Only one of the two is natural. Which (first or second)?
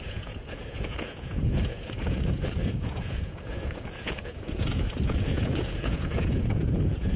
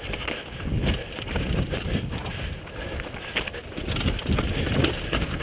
second